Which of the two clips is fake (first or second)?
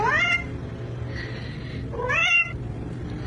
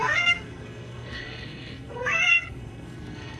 second